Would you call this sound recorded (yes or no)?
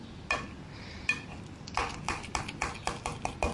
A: yes